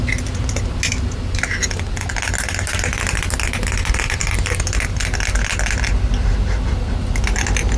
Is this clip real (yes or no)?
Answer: yes